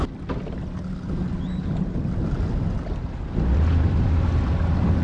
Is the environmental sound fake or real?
real